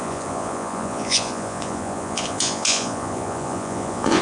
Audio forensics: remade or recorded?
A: remade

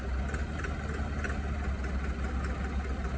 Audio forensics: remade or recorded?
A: recorded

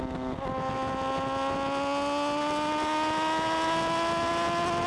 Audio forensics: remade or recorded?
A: recorded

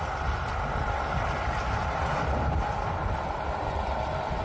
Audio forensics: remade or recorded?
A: recorded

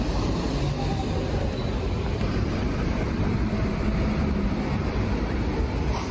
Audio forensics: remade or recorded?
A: remade